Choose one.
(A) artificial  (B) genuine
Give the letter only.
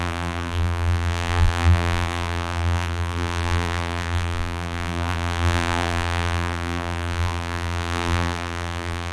A